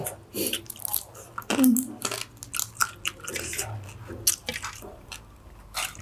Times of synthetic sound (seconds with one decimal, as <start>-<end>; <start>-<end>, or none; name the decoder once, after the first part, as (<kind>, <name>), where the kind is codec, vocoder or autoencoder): 4.4-6.0 (vocoder, BigVGAN v2)